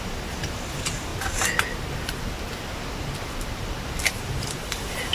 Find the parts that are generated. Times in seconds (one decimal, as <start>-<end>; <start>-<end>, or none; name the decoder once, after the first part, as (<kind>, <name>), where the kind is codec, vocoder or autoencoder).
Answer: 0.0-1.1 (vocoder, BigVGAN v2); 4.2-5.1